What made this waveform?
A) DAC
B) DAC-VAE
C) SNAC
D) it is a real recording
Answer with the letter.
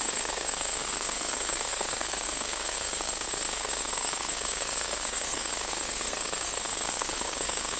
C